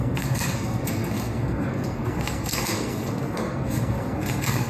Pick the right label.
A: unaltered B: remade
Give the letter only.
B